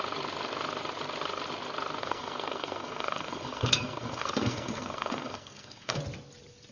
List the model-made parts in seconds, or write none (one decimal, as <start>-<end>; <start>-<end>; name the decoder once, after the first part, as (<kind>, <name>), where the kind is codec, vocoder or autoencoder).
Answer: 2.0-6.0 (codec, SNAC)